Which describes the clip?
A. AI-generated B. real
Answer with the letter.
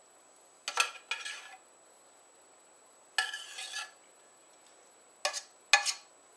B